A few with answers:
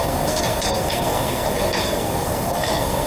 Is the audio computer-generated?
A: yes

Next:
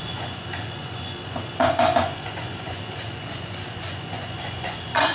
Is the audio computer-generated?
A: yes